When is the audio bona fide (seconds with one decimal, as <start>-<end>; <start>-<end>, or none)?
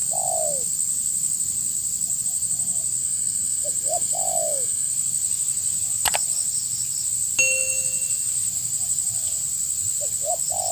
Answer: 0.0-3.0; 4.9-10.7